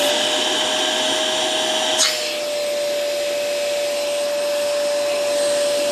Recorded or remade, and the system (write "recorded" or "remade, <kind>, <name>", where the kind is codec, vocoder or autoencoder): recorded